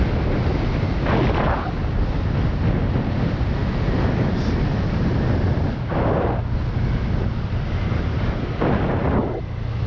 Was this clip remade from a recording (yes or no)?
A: no